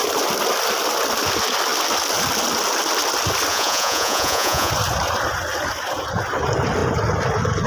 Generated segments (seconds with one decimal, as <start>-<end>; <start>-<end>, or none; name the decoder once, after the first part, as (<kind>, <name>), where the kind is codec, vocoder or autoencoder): 3.5-4.7 (vocoder, Vocos)